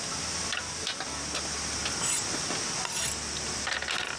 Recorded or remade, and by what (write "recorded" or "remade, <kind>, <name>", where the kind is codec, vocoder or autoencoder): recorded